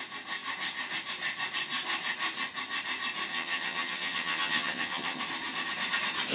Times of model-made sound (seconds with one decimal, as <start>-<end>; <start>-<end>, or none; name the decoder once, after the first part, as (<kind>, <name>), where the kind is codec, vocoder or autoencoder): 3.3-5.2 (vocoder, HiFi-GAN)